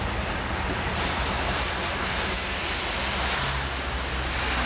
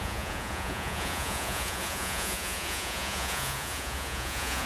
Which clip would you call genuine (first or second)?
first